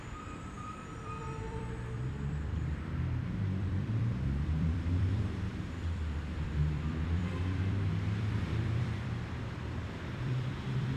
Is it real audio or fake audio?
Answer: fake